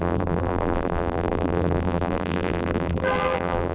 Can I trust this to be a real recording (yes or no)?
no